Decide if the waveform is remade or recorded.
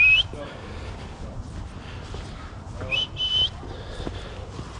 recorded